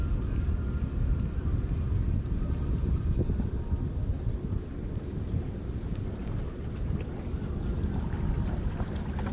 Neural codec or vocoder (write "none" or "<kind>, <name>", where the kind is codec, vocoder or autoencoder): none